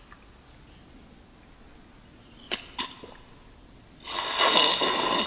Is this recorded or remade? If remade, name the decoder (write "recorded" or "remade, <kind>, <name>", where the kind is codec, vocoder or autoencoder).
recorded